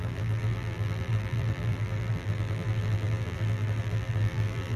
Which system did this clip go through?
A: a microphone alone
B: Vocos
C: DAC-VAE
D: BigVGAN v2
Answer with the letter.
D